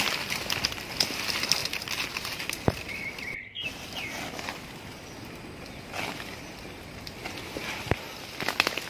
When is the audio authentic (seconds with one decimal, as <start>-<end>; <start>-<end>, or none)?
0.0-1.6; 4.0-8.9